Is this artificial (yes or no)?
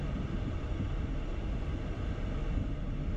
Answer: no